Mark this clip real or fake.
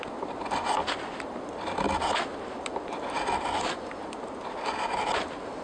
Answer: real